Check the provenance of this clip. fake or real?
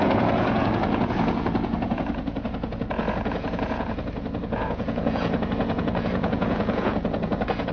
fake